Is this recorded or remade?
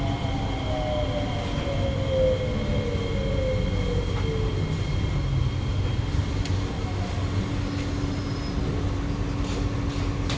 recorded